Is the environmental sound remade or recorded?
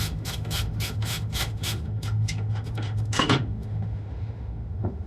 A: remade